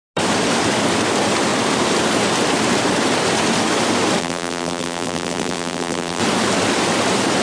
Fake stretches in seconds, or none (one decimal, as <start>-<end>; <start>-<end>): 4.2-6.2